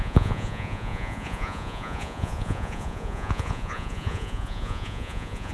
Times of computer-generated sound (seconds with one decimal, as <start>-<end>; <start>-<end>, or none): 0.0-5.5